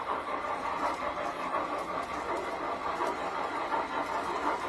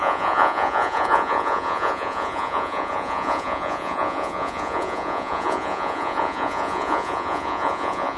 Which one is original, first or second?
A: first